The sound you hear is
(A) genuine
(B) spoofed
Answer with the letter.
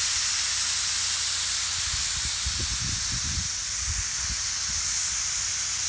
A